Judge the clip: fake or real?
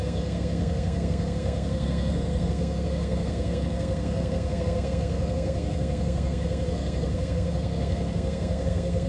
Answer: fake